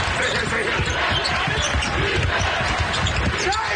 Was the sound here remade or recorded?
recorded